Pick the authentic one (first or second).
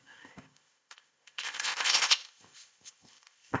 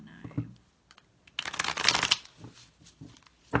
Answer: second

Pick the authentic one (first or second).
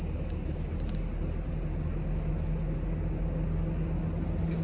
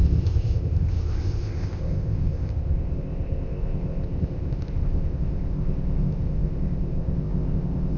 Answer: first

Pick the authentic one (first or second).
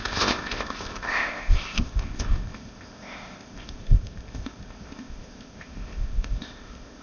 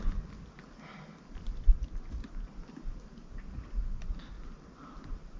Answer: second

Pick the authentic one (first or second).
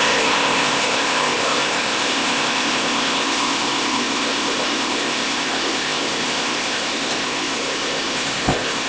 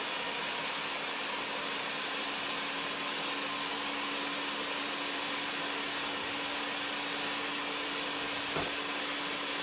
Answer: second